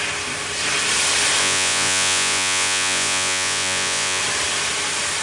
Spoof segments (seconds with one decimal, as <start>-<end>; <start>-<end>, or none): 1.4-4.2